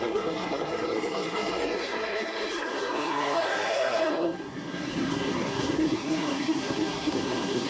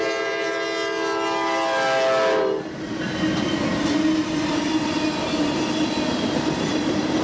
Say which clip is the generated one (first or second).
first